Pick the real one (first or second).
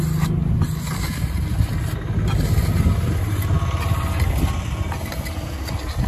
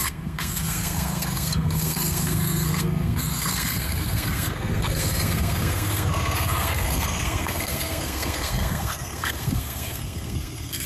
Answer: first